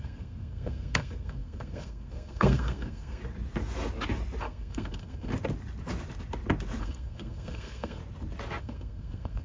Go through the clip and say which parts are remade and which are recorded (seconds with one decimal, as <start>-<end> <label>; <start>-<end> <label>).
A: 0.0-3.2 remade; 3.2-4.4 recorded; 4.4-5.3 remade; 5.3-6.8 recorded; 6.8-8.0 remade; 8.0-8.6 recorded; 8.6-9.4 remade